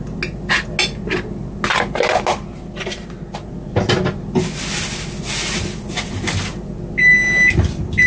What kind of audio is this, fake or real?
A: real